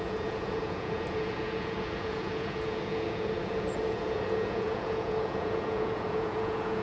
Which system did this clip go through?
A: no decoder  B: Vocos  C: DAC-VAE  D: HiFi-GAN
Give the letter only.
B